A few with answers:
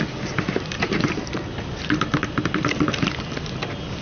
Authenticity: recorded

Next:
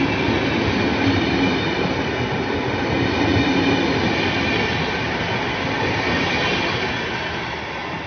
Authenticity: recorded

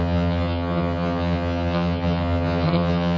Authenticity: remade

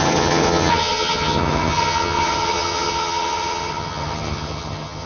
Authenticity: remade